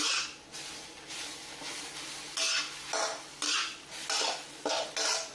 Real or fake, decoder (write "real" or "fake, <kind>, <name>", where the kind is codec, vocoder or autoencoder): real